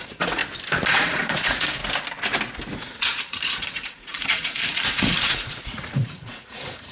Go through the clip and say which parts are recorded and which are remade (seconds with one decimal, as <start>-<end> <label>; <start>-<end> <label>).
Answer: 0.0-0.4 remade; 0.4-0.9 recorded; 0.9-1.8 remade; 1.8-2.7 recorded; 2.7-6.9 remade